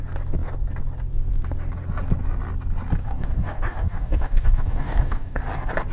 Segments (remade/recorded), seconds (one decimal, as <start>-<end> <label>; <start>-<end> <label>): 0.0-3.0 recorded; 3.0-5.4 remade; 5.4-5.9 recorded